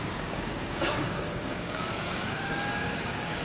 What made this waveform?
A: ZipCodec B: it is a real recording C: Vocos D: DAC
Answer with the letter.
D